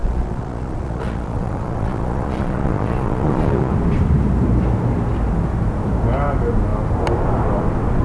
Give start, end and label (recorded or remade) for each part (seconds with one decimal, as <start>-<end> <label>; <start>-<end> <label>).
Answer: 0.0-3.7 remade; 3.7-8.0 recorded

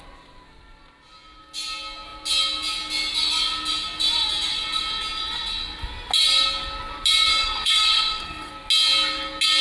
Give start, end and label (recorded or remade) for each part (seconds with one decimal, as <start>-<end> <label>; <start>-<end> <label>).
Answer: 0.0-7.3 recorded; 7.3-8.5 remade; 8.5-9.6 recorded

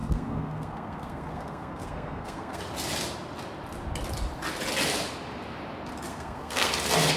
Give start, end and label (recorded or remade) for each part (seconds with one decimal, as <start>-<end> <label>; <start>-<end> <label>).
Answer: 0.0-2.6 remade; 2.6-6.1 recorded; 6.1-6.7 remade; 6.7-7.2 recorded

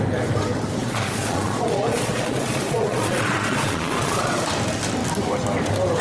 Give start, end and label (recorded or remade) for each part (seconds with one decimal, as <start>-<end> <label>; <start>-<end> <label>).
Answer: 0.0-0.8 recorded; 0.8-4.4 remade; 4.4-6.0 recorded

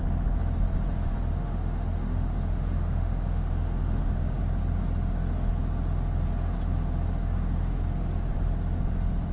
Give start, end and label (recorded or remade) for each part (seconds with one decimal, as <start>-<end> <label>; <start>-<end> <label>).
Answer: 0.0-1.3 recorded; 1.3-4.4 remade; 4.4-9.3 recorded

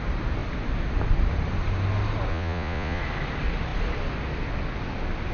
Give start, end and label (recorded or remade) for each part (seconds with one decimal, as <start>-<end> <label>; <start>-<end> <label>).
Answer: 0.0-2.3 recorded; 2.3-3.0 remade; 3.0-5.3 recorded